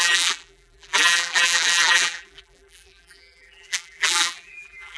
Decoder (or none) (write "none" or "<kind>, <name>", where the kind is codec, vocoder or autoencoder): vocoder, BigVGAN v2